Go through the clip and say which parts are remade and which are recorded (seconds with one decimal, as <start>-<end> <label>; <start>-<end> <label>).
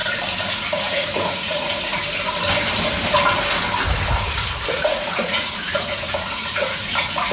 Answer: 0.0-0.5 recorded; 0.5-1.9 remade; 1.9-4.7 recorded; 4.7-7.3 remade